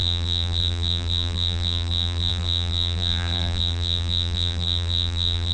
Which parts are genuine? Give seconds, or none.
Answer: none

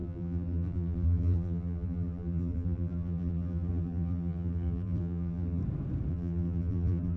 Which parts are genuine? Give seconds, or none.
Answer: 5.6-6.1